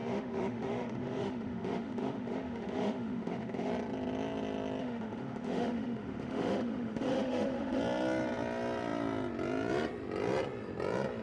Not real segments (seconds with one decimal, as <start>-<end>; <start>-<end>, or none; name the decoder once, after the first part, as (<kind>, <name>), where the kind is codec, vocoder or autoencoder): 0.0-3.7 (autoencoder, DAC-VAE); 4.8-7.8